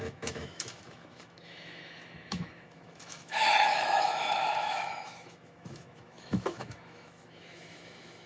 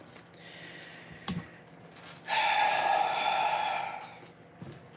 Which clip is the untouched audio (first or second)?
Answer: second